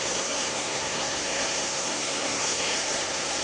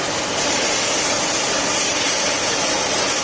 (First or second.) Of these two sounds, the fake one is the first